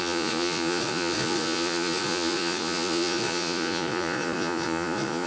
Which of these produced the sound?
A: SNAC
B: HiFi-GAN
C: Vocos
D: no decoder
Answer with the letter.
C